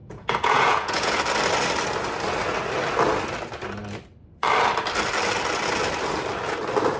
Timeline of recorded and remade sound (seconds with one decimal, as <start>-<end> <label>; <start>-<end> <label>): 0.0-1.2 remade; 1.2-7.0 recorded

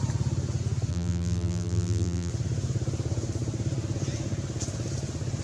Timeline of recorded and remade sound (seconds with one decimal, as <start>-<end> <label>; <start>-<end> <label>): 0.0-0.9 recorded; 0.9-2.3 remade; 2.3-5.4 recorded

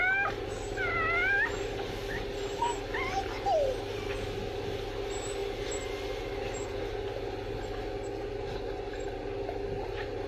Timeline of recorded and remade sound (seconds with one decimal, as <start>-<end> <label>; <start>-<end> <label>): 0.0-10.3 recorded

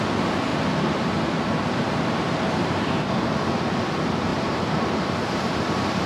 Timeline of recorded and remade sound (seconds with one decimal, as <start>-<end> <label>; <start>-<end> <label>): 0.0-0.5 recorded; 0.5-3.0 remade; 3.0-4.3 recorded; 4.3-6.1 remade

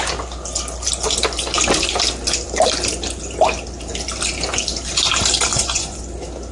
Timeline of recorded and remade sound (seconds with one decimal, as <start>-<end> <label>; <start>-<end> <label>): 0.0-5.5 recorded; 5.5-6.0 remade; 6.0-6.5 recorded

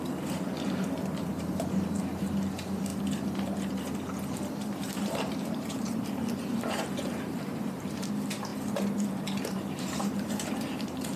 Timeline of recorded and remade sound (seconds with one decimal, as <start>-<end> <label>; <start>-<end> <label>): 0.0-2.9 remade; 2.9-4.5 recorded; 4.5-11.2 remade